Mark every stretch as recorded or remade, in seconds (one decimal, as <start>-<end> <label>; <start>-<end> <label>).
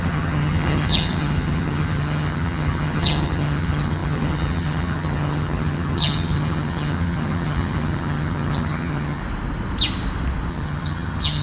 0.0-9.2 remade; 9.2-10.5 recorded; 10.5-11.4 remade